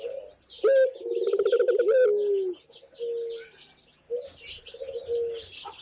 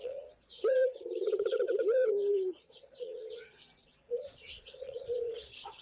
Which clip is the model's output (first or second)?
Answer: second